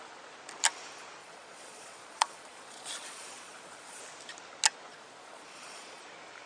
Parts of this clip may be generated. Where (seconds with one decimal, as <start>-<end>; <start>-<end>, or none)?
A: 1.2-4.0; 4.9-6.0